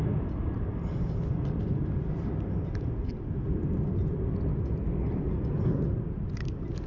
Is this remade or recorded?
recorded